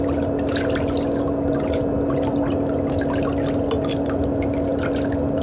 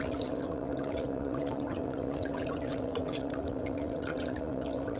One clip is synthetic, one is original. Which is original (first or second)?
first